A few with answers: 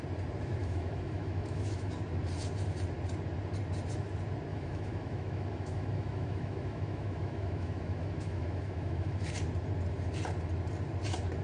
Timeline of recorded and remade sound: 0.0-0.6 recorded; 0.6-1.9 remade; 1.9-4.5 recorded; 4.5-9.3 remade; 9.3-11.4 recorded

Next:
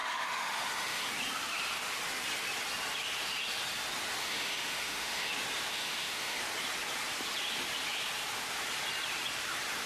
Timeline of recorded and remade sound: 0.0-1.1 remade; 1.1-4.2 recorded; 4.2-5.3 remade; 5.3-5.7 recorded; 5.7-6.4 remade; 6.4-9.9 recorded